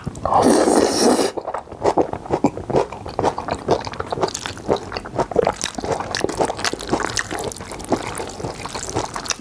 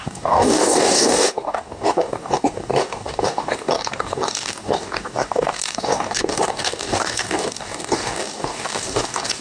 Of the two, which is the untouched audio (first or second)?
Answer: first